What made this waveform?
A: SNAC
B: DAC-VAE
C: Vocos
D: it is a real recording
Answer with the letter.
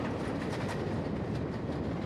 D